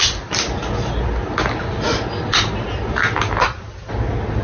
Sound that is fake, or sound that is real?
real